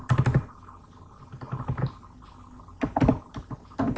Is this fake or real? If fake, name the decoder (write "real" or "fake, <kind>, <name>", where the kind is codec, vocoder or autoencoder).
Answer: real